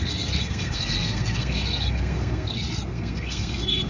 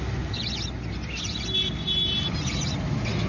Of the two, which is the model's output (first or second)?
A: first